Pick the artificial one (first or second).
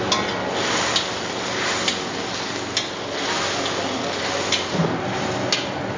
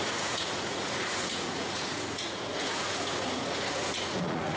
second